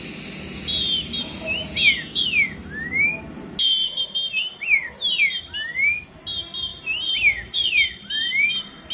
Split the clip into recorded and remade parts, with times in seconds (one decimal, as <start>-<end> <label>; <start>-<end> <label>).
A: 0.0-3.8 recorded; 3.8-5.2 remade; 5.2-6.7 recorded; 6.7-8.5 remade; 8.5-8.9 recorded